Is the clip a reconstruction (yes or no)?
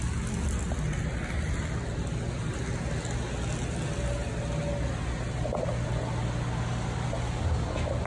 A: no